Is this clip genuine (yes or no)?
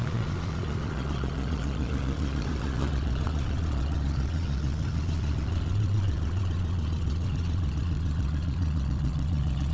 no